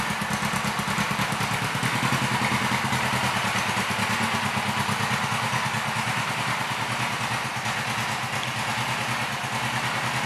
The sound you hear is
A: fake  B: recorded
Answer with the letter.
B